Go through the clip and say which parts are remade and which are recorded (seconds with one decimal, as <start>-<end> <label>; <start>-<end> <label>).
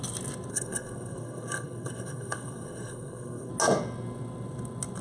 0.0-0.5 recorded; 0.5-3.5 remade; 3.5-5.0 recorded